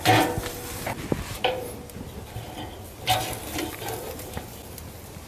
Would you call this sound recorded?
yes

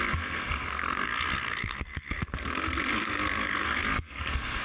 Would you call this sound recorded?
no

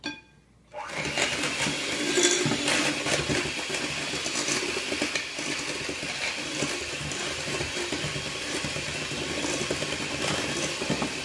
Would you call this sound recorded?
yes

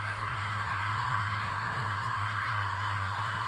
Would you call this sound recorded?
no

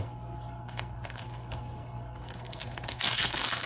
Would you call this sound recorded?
no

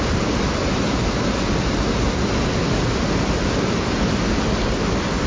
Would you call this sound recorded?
yes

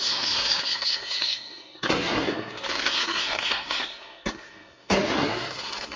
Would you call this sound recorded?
no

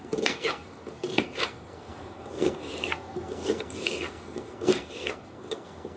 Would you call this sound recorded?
no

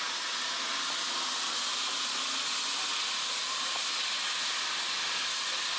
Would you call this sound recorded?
yes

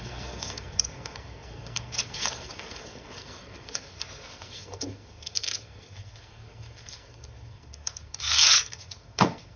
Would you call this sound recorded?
no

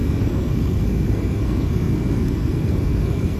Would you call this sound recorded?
no